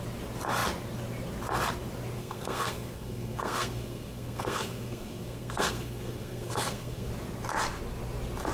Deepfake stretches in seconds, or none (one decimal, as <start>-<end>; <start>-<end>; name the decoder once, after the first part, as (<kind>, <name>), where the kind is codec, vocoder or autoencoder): 2.2-7.1 (codec, SNAC)